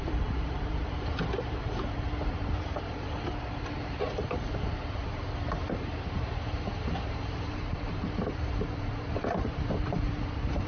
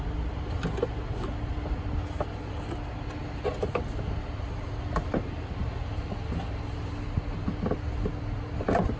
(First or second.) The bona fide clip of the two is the second